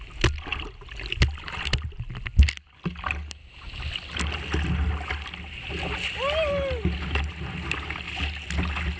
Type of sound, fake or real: real